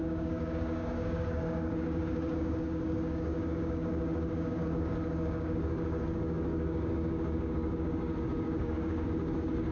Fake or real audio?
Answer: fake